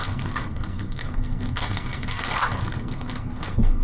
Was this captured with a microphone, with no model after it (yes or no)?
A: no